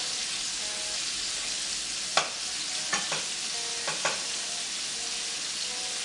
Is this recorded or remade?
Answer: recorded